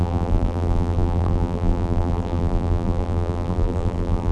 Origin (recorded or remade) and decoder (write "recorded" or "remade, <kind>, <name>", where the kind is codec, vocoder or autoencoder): remade, vocoder, BigVGAN v2